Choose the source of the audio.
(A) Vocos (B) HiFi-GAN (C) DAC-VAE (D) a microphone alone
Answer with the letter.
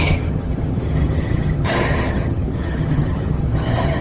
B